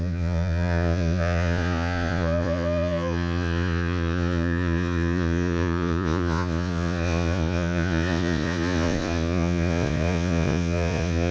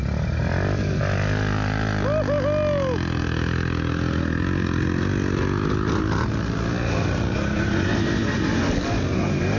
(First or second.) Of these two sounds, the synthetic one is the first